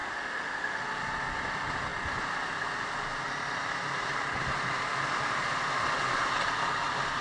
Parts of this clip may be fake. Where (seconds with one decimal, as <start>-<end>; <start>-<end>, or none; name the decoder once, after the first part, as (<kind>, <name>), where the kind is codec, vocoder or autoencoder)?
0.0-0.8 (autoencoder, DAC-VAE)